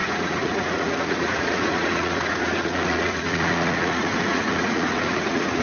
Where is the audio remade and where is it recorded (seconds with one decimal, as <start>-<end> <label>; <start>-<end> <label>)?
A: 0.0-5.6 remade